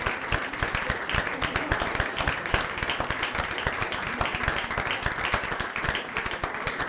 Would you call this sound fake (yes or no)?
no